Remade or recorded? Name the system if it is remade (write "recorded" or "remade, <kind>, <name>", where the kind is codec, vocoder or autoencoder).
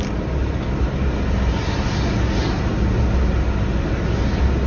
recorded